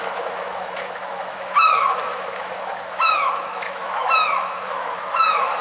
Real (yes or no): no